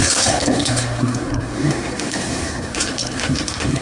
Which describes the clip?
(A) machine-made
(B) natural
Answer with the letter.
A